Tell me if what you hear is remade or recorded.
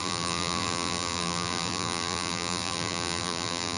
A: remade